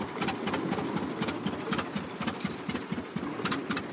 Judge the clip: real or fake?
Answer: real